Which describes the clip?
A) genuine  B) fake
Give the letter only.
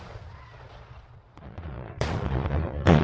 B